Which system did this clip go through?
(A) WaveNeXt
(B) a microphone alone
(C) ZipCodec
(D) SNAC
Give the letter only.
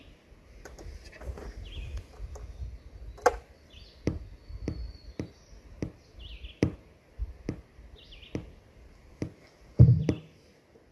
B